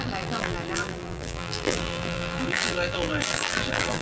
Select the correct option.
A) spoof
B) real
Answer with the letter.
A